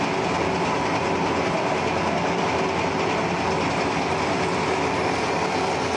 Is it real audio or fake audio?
real